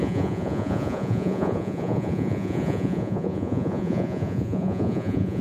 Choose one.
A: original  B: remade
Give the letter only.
B